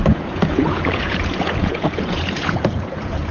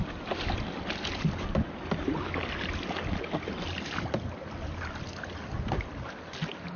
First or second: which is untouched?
second